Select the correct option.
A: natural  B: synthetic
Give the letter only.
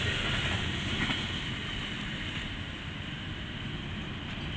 A